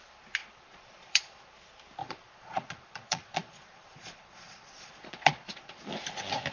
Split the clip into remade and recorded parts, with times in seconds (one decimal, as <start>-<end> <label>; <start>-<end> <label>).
0.0-0.4 recorded; 0.4-1.5 remade; 1.5-2.0 recorded; 2.0-5.9 remade; 5.9-6.5 recorded